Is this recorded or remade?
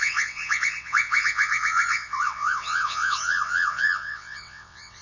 remade